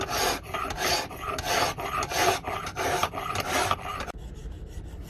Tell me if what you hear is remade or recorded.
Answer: recorded